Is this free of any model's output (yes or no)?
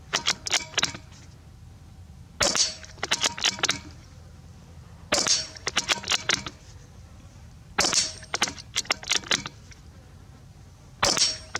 yes